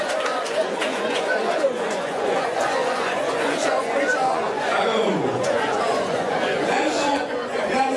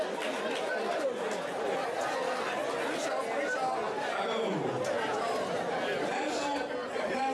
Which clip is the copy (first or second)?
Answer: first